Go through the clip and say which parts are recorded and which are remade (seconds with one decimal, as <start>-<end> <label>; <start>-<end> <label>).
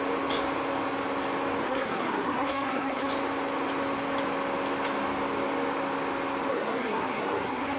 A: 0.0-1.6 recorded; 1.6-3.1 remade; 3.1-6.5 recorded; 6.5-7.8 remade